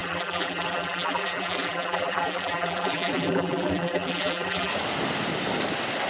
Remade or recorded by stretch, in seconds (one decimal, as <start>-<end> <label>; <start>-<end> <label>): 0.0-4.7 remade; 4.7-6.1 recorded

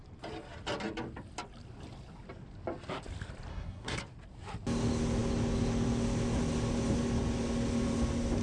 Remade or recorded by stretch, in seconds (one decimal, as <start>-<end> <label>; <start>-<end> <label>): 0.0-3.5 recorded; 3.5-4.0 remade; 4.0-8.4 recorded

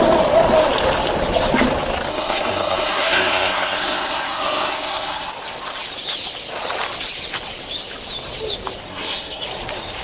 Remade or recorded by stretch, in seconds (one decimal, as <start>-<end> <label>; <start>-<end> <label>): 0.0-2.1 recorded; 2.1-5.3 remade; 5.3-8.9 recorded; 8.9-9.4 remade; 9.4-10.0 recorded

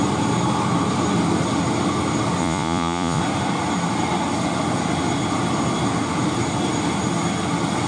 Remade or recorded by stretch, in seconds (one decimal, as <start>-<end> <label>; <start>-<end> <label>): 0.0-2.4 recorded; 2.4-3.2 remade; 3.2-7.9 recorded

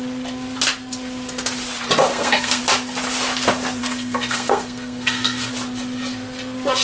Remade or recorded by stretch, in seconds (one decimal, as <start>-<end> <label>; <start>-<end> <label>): 0.0-2.1 recorded; 2.1-2.6 remade; 2.6-3.8 recorded; 3.8-5.5 remade; 5.5-6.8 recorded

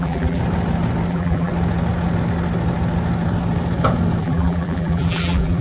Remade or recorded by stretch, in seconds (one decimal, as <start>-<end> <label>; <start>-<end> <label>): 0.0-0.4 remade; 0.4-1.1 recorded; 1.1-1.5 remade; 1.5-4.2 recorded; 4.2-5.6 remade